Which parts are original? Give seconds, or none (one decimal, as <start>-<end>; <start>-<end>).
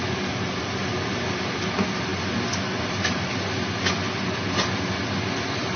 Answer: 0.0-5.8